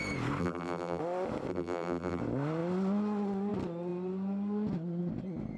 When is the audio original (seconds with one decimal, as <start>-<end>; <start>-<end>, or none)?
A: 0.0-0.4; 1.0-1.5; 2.2-5.6